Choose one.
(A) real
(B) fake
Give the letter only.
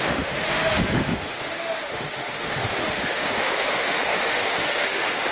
B